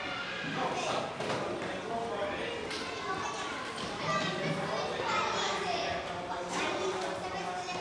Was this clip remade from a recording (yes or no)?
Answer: no